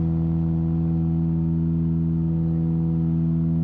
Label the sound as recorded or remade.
recorded